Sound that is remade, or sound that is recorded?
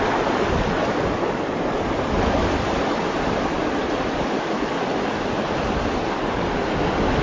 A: recorded